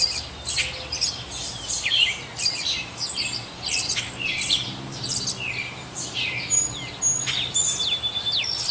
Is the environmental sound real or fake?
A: real